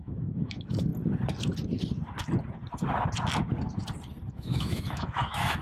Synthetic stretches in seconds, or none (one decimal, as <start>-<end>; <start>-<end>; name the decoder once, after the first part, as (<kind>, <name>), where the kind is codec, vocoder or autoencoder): 0.0-0.9 (autoencoder, DAC-VAE); 4.3-5.6